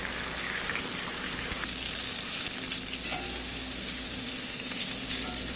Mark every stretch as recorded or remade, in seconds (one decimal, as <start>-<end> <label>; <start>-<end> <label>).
0.0-3.3 recorded; 3.3-5.1 remade; 5.1-5.6 recorded